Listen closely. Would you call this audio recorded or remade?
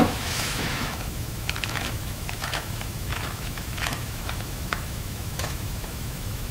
remade